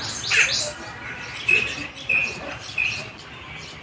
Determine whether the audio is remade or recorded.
recorded